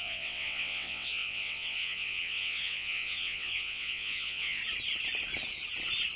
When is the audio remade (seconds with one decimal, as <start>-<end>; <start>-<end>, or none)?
0.0-4.6